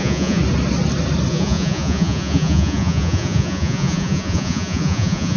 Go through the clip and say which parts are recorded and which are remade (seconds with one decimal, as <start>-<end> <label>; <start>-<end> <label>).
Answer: 0.0-0.4 remade; 0.4-1.3 recorded; 1.3-5.4 remade